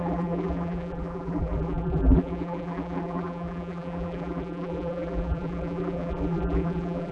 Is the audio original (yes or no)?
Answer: no